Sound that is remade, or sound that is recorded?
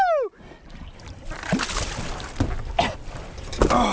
recorded